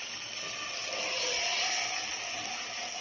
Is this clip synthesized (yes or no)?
no